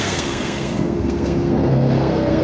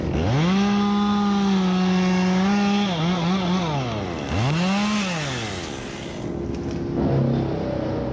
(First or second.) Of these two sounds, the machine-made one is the first